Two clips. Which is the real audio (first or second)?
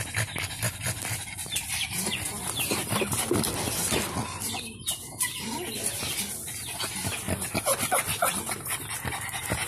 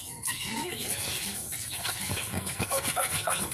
first